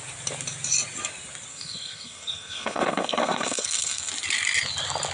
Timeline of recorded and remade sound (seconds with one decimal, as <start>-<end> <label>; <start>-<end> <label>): 0.0-1.5 recorded; 1.5-4.1 remade; 4.1-5.1 recorded